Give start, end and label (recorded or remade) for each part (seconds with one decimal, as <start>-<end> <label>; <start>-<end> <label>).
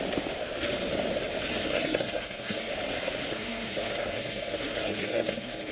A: 0.0-1.5 recorded; 1.5-2.7 remade; 2.7-3.3 recorded; 3.3-5.7 remade